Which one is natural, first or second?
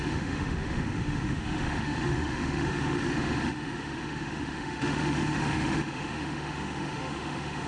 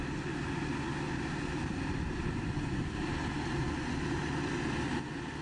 second